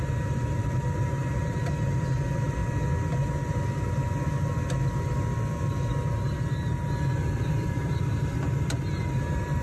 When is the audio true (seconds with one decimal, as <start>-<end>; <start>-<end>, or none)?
2.6-7.5